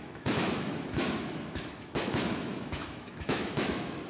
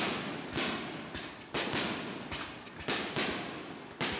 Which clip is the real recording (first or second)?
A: second